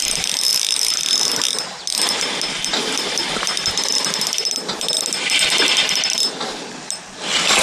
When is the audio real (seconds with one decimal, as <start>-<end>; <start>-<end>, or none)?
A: 0.0-7.6